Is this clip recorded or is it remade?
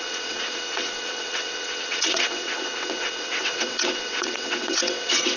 remade